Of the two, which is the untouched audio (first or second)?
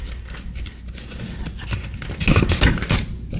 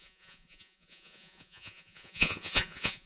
first